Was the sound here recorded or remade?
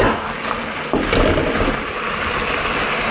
recorded